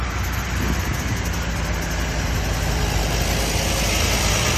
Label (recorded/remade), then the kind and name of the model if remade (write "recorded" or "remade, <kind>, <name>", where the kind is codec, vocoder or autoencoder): recorded